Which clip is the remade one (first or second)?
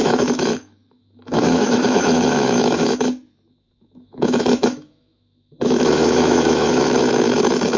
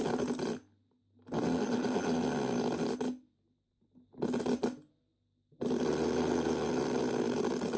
first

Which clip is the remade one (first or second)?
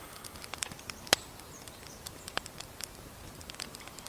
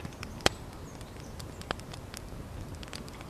first